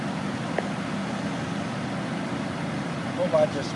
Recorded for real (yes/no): yes